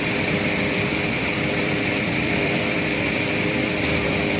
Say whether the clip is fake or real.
fake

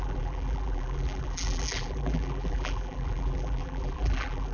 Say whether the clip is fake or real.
fake